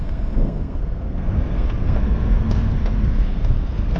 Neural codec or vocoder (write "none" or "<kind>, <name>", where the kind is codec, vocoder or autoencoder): codec, SNAC